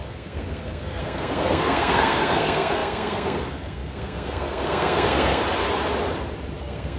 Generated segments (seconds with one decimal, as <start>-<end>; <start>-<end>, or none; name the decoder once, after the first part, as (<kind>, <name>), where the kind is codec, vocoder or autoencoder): 0.0-5.4 (codec, SNAC); 6.6-7.0